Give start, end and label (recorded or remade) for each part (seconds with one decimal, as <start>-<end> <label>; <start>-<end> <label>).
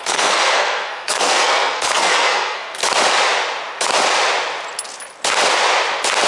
0.0-2.8 remade; 2.8-6.3 recorded